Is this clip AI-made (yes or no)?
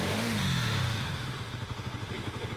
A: yes